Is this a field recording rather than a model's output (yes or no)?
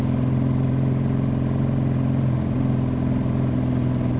yes